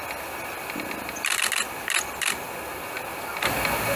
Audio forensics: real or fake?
real